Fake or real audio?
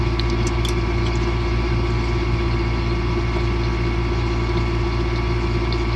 real